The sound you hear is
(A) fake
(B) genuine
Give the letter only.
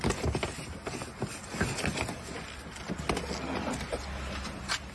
B